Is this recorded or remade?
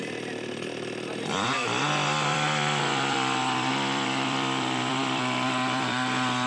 remade